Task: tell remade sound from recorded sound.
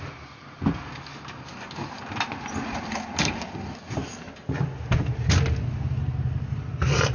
recorded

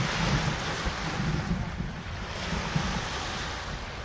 recorded